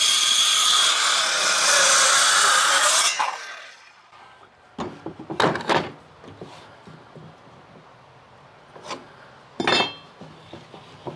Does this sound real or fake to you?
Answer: real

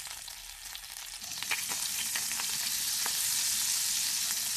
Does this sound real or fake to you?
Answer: real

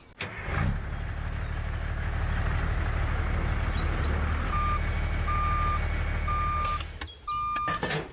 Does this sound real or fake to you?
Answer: real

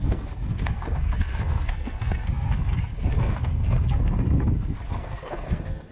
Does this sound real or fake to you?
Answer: fake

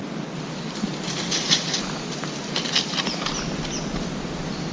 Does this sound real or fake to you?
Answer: real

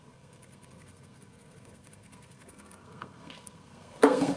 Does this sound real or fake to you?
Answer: fake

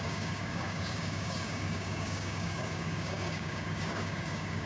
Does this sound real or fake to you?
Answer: fake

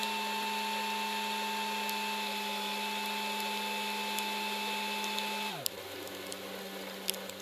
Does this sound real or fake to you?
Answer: real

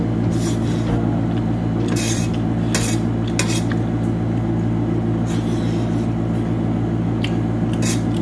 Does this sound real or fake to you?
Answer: real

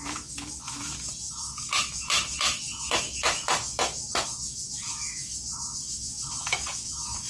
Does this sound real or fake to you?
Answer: fake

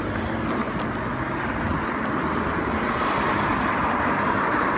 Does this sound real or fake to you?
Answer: real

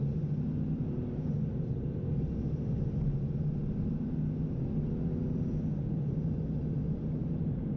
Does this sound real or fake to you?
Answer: real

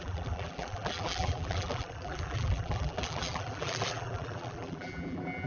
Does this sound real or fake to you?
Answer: fake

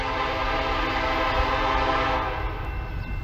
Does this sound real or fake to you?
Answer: real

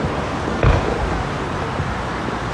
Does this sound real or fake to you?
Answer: real